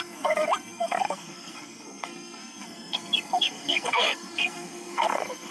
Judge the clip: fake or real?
fake